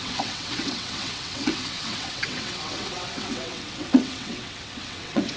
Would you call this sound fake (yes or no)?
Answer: yes